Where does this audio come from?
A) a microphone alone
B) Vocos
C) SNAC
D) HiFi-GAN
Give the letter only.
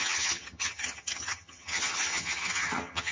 D